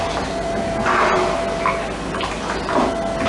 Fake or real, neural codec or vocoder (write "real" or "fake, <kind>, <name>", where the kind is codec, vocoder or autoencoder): real